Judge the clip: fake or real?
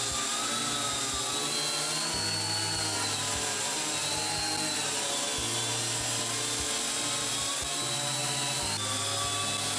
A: real